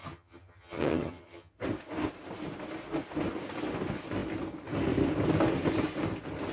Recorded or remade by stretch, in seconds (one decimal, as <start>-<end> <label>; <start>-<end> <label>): 0.0-1.5 remade; 1.5-6.5 recorded